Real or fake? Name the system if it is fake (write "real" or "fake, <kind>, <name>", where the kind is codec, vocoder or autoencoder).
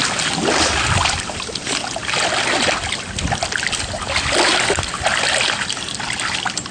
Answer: real